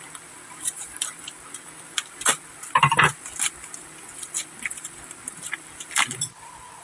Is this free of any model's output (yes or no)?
yes